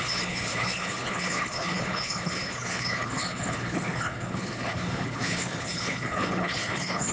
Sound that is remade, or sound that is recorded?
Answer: remade